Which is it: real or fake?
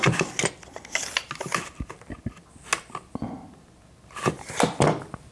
real